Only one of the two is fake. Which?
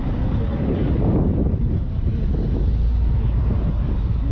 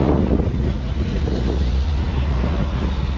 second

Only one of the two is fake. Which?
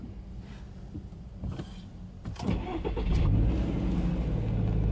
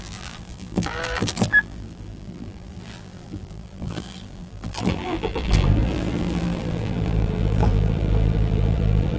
second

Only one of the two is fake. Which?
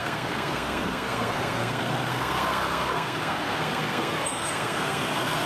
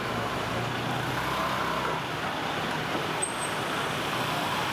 first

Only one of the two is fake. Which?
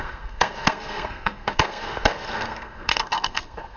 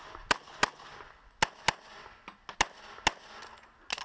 first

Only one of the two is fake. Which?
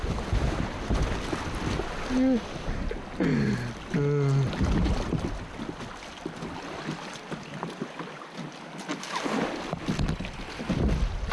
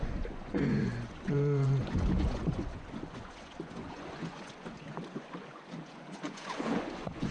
second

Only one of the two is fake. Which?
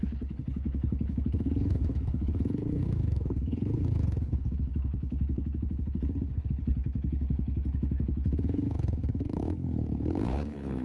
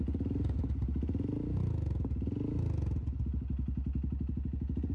first